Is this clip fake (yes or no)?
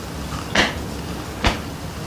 no